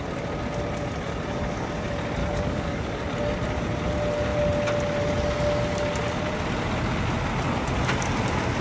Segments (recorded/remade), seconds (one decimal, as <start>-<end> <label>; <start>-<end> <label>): 0.0-2.2 recorded; 2.2-3.0 remade; 3.0-8.6 recorded